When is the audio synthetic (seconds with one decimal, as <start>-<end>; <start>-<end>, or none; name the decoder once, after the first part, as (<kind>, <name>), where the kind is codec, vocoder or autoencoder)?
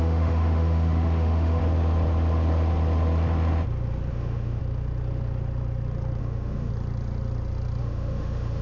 0.0-1.6 (autoencoder, DAC-VAE); 4.1-4.6; 6.2-6.7; 7.8-8.6